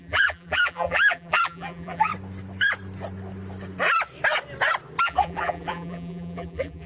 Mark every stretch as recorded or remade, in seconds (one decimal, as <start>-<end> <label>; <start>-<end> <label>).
0.0-2.1 remade; 2.1-5.0 recorded; 5.0-6.9 remade